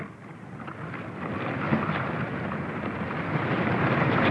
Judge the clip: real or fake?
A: real